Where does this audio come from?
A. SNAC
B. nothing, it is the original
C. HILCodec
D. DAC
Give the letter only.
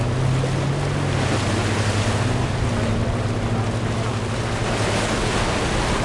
B